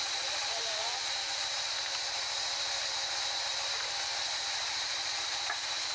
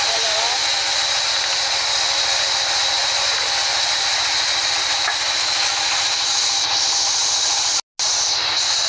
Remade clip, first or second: first